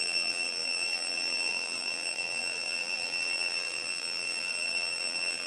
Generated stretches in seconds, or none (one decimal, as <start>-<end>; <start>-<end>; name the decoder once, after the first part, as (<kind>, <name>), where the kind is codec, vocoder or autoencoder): 0.0-5.5 (vocoder, BigVGAN v2)